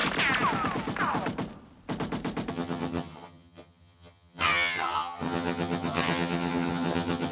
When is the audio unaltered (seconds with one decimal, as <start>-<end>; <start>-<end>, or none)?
0.0-2.5